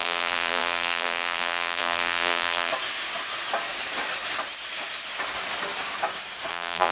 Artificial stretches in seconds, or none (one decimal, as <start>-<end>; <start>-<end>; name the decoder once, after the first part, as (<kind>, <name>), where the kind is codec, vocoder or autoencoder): 0.0-2.7 (vocoder, BigVGAN v2); 6.5-6.9